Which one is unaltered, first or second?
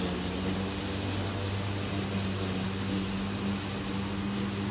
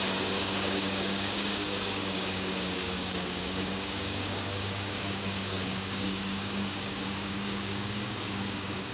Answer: first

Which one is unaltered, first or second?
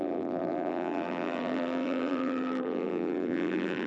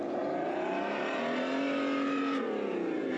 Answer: second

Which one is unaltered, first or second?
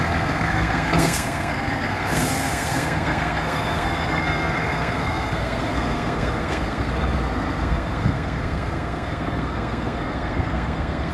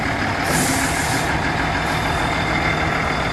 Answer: second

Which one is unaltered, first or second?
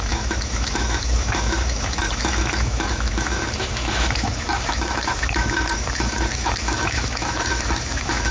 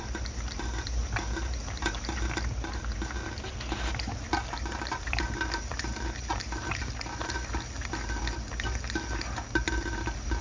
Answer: second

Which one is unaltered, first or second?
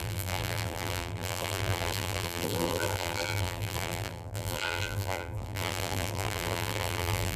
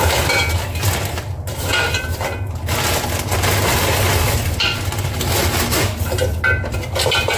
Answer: second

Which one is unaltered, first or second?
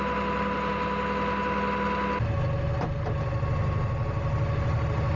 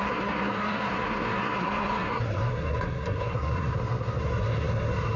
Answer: first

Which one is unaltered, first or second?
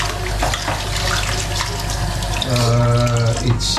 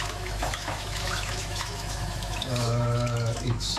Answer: first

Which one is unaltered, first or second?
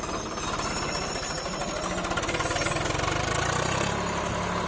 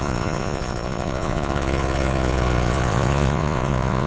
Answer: first